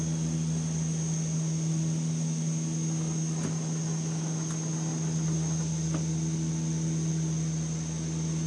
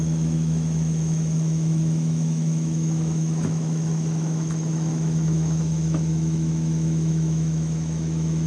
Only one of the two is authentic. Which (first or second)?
first